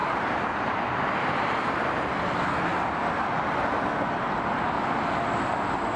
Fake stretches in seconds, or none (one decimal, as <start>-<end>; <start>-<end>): 0.0-1.9